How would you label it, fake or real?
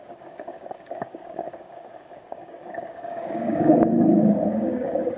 fake